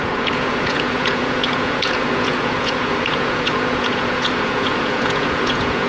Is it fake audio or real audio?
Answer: fake